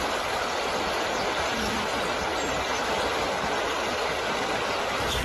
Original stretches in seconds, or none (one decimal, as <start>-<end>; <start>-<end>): 0.0-5.2